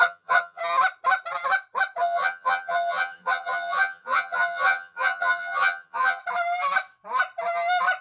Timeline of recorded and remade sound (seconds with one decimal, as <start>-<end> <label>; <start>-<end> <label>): 0.0-0.6 remade; 0.6-2.0 recorded; 2.0-6.2 remade; 6.2-8.0 recorded